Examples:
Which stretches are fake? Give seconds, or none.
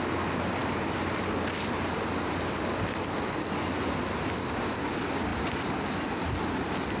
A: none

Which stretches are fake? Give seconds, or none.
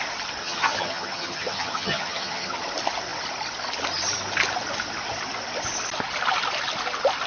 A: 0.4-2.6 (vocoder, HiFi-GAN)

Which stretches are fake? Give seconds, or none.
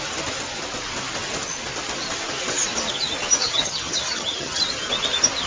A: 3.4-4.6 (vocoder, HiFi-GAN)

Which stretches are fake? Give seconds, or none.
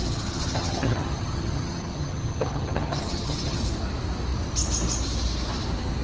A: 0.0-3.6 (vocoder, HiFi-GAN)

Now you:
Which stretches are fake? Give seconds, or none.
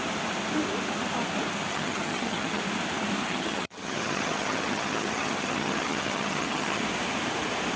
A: 1.7-2.6 (vocoder, HiFi-GAN); 3.2-6.8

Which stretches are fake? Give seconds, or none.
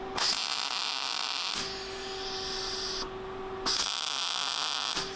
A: none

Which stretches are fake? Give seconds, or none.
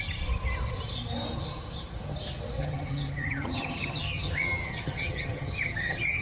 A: 2.6-6.2 (vocoder, HiFi-GAN)